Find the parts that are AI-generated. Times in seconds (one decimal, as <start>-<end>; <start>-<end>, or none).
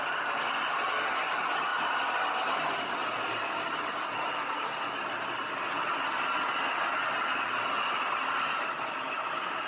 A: none